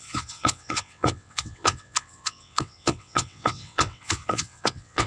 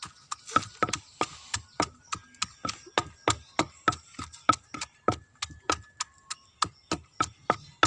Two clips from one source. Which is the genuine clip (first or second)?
second